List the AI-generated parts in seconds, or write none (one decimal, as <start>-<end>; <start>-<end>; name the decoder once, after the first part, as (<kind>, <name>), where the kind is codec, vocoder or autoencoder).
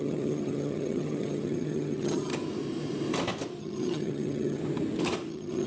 0.0-2.3 (vocoder, HiFi-GAN); 3.6-4.6; 5.3-5.7